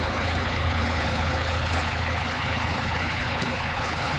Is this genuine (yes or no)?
no